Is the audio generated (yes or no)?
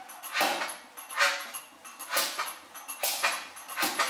no